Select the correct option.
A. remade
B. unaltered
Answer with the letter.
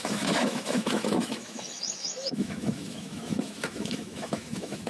A